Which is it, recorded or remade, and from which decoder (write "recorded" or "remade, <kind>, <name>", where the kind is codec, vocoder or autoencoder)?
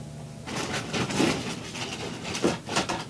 recorded